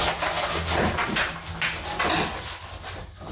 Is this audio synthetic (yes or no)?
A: no